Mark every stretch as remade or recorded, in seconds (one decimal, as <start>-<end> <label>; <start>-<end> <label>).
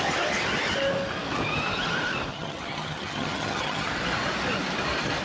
0.0-2.3 recorded; 2.3-3.9 remade; 3.9-5.2 recorded